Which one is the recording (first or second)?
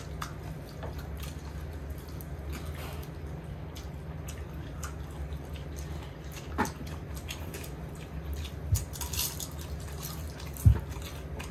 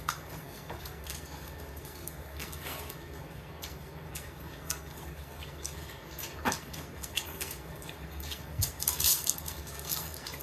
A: first